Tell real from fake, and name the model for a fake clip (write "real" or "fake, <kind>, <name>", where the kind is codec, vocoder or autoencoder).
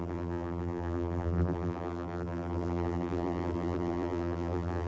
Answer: fake, vocoder, BigVGAN v2